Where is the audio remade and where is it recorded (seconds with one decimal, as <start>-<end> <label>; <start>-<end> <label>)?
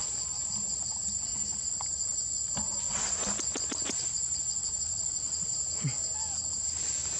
0.0-5.5 recorded; 5.5-6.0 remade; 6.0-7.2 recorded